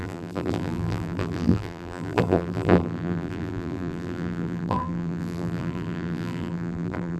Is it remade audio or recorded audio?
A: remade